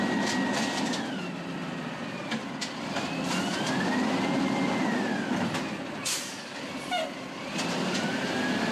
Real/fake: real